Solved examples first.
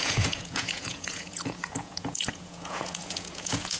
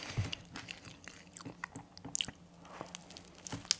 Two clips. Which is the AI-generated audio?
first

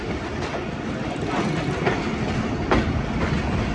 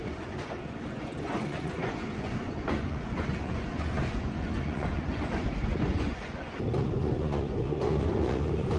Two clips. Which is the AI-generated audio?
second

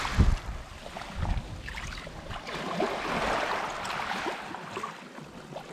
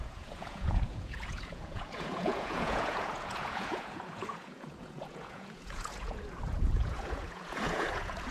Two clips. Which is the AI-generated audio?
second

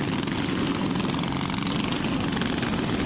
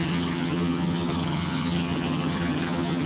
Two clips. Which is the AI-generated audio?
second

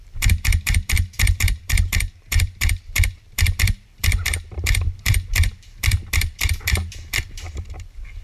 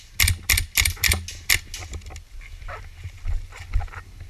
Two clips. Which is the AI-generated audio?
first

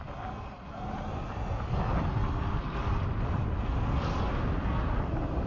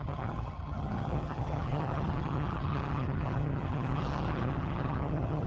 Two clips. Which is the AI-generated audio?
second